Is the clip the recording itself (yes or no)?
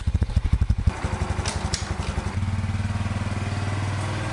yes